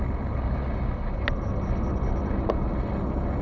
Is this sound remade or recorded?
recorded